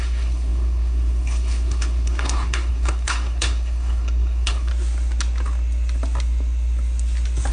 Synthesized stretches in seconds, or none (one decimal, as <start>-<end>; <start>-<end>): 0.0-4.7